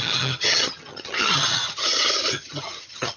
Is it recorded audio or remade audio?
remade